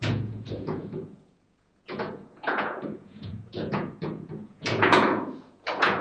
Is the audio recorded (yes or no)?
no